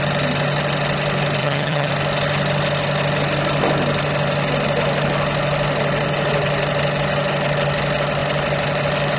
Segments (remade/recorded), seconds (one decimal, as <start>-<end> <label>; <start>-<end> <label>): 0.0-1.4 recorded; 1.4-1.9 remade; 1.9-9.2 recorded

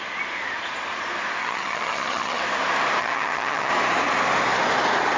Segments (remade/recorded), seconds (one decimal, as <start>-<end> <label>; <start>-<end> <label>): 0.0-1.4 recorded; 1.4-2.4 remade; 2.4-3.0 recorded; 3.0-3.7 remade; 3.7-5.2 recorded

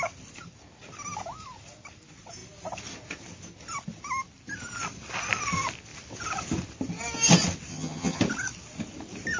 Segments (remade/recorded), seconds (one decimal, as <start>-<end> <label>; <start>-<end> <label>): 0.0-7.7 recorded; 7.7-8.2 remade; 8.2-9.4 recorded